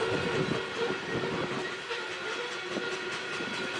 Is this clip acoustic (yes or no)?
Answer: yes